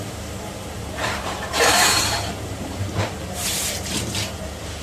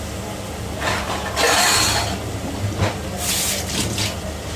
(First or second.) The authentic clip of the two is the second